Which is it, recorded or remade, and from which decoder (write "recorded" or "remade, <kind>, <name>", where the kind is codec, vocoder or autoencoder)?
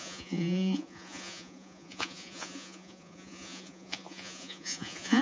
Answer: remade, vocoder, Vocos